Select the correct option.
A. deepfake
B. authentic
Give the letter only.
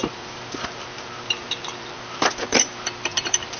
A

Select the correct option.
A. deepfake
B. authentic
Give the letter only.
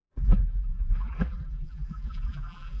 A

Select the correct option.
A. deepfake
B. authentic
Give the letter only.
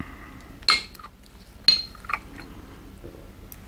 B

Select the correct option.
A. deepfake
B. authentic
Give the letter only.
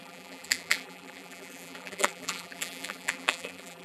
A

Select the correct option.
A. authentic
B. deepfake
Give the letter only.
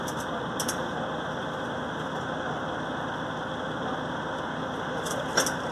A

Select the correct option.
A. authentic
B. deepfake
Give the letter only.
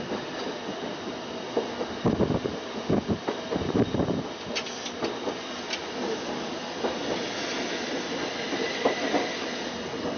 A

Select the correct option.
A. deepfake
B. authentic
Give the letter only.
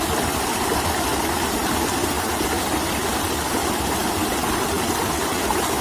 B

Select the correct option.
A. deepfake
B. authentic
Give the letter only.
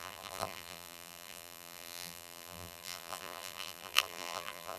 A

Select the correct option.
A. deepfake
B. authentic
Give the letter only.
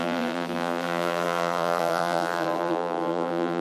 A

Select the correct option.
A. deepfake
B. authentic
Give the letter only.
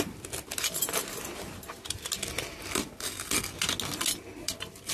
B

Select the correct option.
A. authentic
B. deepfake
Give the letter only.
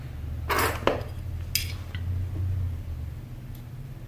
A